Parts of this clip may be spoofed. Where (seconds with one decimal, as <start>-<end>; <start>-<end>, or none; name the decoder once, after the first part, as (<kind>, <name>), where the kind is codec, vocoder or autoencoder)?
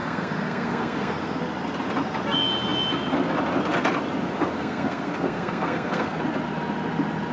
0.0-1.4 (codec, SNAC); 4.3-6.2